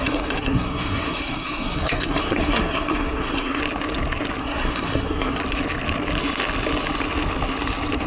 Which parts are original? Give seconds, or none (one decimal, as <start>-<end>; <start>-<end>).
3.6-4.4; 5.4-8.1